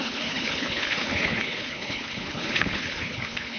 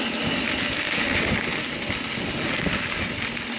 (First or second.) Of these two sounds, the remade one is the first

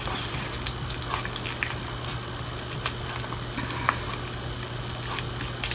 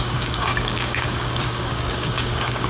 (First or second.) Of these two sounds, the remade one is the second